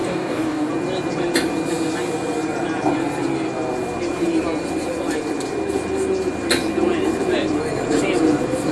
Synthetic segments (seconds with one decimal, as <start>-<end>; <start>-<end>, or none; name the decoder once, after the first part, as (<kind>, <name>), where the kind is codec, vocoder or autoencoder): 0.0-0.7 (codec, DAC)